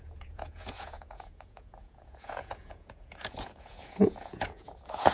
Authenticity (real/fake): fake